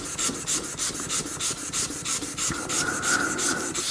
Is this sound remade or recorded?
recorded